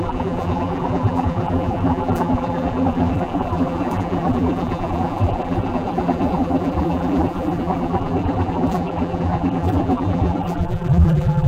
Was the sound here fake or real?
fake